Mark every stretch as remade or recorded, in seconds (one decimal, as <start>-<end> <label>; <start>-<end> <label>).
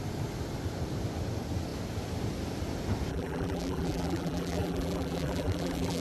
0.0-3.1 recorded; 3.1-6.0 remade